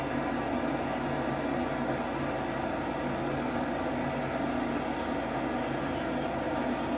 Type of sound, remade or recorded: recorded